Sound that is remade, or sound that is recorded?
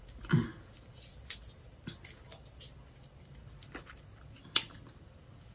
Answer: recorded